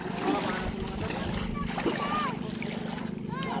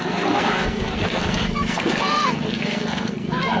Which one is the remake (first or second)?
second